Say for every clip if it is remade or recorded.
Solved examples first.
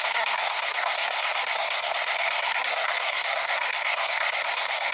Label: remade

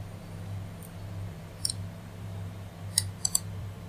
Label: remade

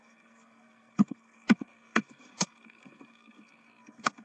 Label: remade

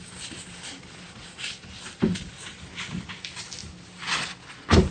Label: recorded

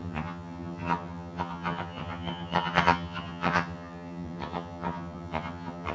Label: remade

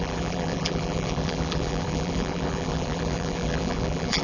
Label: remade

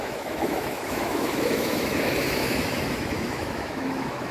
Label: remade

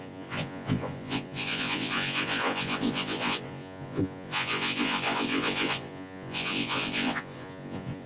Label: remade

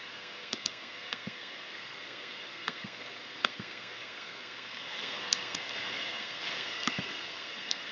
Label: remade